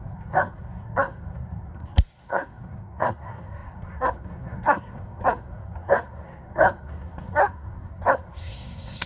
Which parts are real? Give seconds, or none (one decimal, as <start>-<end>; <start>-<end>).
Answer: none